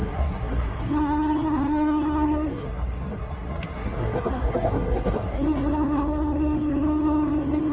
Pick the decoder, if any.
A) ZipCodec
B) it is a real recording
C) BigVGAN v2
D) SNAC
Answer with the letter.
D